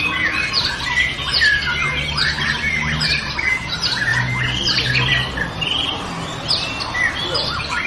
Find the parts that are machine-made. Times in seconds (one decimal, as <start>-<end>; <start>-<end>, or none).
none